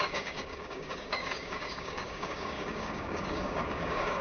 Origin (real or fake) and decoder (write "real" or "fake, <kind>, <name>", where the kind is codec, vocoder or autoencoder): fake, codec, DAC